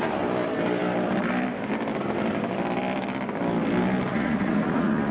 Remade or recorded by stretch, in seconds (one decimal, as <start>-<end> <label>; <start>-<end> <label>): 0.0-4.1 recorded; 4.1-5.1 remade